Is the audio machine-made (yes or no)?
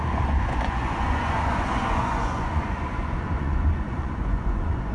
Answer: yes